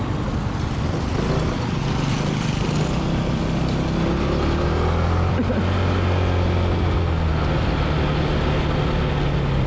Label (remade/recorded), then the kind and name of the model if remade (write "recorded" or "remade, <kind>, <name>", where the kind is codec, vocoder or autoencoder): recorded